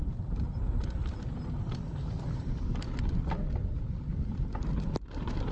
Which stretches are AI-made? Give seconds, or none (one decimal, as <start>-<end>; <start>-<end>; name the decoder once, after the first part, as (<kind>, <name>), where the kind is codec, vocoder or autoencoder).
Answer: 1.0-2.8 (vocoder, BigVGAN v2)